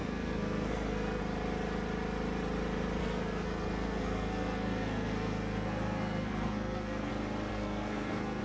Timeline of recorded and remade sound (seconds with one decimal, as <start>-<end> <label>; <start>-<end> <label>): 0.0-1.2 remade; 1.2-3.0 recorded; 3.0-7.1 remade; 7.1-7.5 recorded; 7.5-8.4 remade